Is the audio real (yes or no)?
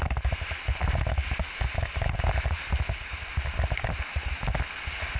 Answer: yes